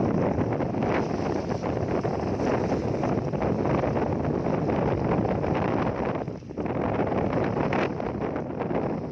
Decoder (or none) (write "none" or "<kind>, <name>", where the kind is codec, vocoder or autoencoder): none